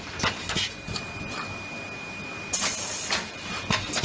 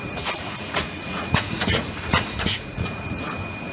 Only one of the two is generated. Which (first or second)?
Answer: second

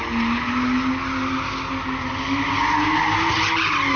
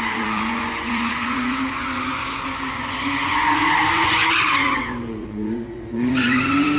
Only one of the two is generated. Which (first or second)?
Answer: second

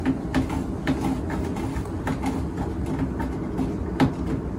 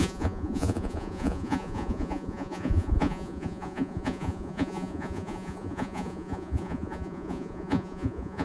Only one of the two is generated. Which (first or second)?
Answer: second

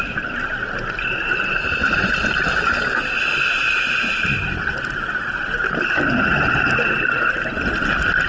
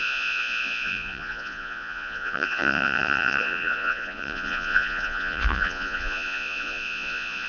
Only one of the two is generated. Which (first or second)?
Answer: second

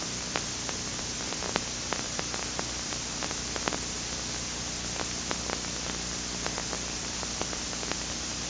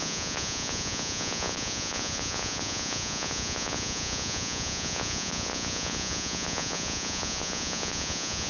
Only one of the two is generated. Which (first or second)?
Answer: second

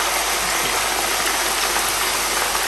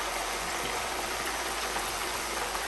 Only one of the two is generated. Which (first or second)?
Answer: second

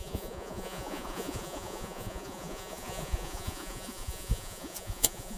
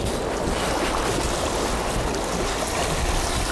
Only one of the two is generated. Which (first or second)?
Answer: first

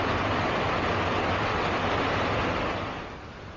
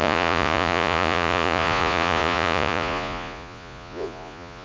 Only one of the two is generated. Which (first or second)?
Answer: second